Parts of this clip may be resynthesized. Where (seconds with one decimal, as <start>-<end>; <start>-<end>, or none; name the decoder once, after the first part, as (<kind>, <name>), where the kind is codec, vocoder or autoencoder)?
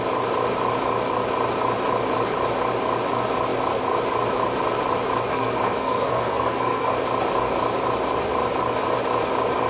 5.3-6.9 (codec, SNAC)